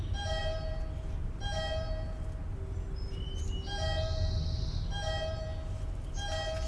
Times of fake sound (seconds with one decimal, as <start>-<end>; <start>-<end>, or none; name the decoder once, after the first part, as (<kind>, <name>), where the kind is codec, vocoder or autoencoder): none